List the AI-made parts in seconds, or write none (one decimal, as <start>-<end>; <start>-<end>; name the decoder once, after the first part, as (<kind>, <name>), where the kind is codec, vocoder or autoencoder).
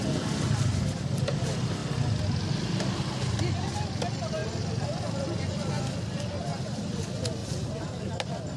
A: 6.5-7.0 (vocoder, BigVGAN v2); 7.4-8.1